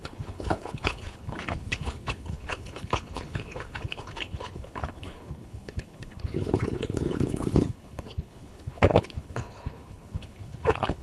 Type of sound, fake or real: fake